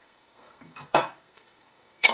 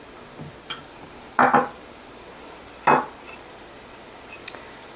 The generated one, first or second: first